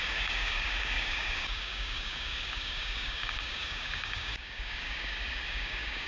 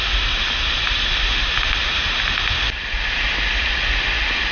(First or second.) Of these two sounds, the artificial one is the first